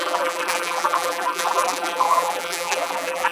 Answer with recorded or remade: remade